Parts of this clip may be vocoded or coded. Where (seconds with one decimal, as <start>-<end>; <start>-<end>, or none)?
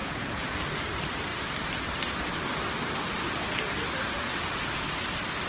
0.0-0.6